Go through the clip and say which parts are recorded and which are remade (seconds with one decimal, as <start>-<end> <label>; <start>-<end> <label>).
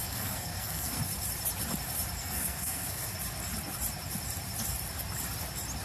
0.0-1.0 remade; 1.0-2.2 recorded; 2.2-3.1 remade; 3.1-5.8 recorded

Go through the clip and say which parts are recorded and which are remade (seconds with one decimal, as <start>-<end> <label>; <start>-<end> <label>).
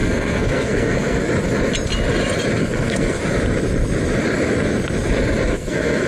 0.0-1.3 remade; 1.3-2.6 recorded; 2.6-3.2 remade; 3.2-5.5 recorded; 5.5-6.1 remade